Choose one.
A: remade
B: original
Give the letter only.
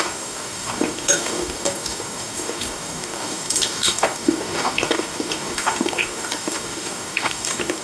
A